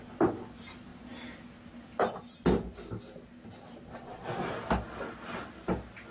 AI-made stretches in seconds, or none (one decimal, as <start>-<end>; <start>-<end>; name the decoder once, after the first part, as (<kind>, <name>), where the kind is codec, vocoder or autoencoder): none